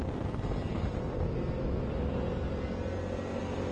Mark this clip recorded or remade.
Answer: recorded